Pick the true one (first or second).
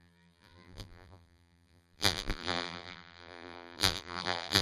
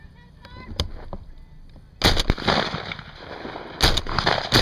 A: second